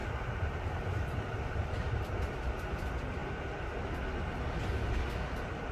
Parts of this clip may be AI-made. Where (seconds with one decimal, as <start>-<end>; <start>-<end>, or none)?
0.0-2.5